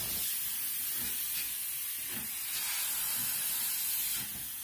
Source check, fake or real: real